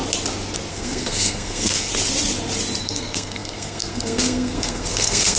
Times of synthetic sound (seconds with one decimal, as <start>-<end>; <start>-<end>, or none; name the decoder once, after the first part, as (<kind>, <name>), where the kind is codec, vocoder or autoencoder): 0.7-1.9 (codec, SNAC); 2.8-5.4